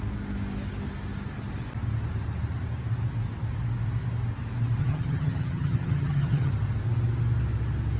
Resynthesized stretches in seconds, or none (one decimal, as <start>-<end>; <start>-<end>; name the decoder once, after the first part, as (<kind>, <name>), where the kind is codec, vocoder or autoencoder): 4.8-6.5 (vocoder, HiFi-GAN)